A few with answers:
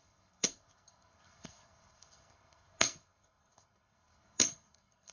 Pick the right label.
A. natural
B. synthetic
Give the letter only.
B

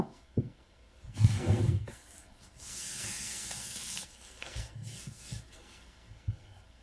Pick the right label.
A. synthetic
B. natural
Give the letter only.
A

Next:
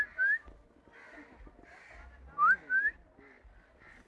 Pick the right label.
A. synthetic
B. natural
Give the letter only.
B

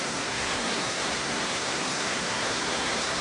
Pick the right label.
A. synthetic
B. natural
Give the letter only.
A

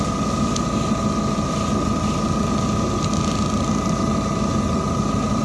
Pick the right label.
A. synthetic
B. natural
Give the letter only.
B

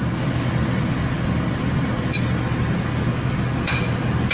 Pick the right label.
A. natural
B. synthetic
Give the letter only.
A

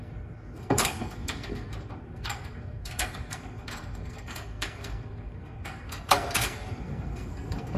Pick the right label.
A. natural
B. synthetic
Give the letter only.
B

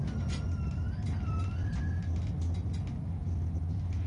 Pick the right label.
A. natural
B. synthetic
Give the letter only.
A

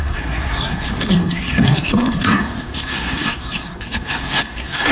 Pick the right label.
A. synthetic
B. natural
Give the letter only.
A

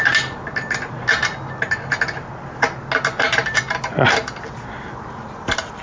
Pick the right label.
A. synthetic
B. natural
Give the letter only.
B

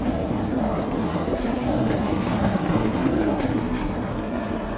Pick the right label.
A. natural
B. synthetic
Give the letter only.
B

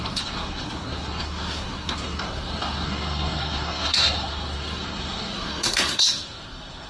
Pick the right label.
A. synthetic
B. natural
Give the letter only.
A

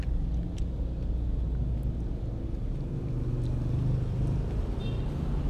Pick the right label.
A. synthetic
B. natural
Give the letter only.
B